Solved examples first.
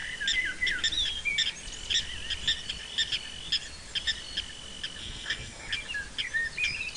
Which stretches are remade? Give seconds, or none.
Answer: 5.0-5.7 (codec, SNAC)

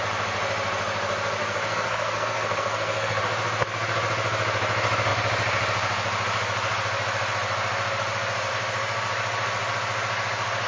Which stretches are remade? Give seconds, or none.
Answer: 1.4-3.2 (codec, SNAC)

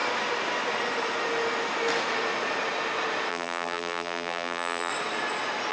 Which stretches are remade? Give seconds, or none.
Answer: 3.3-4.9 (vocoder, BigVGAN v2)

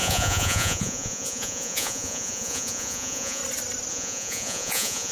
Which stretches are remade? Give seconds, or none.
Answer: 0.0-3.4 (vocoder, Vocos); 3.9-5.1

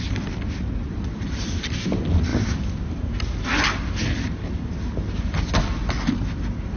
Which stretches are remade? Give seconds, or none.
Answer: none

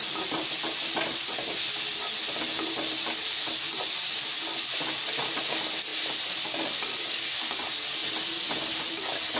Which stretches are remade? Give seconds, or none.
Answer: 5.9-7.2 (vocoder, BigVGAN v2)

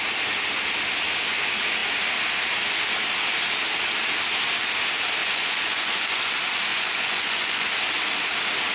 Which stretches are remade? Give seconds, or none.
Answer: 5.2-6.3 (vocoder, Vocos); 6.7-7.7

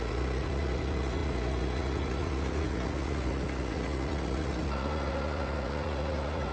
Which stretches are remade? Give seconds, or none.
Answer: 0.0-6.5 (vocoder, Vocos)